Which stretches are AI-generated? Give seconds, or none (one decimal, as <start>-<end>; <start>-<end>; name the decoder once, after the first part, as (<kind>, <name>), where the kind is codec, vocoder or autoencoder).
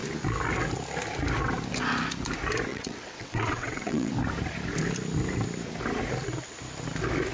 2.7-4.1 (vocoder, WaveNeXt)